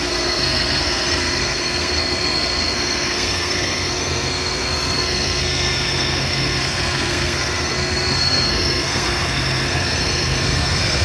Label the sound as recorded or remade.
remade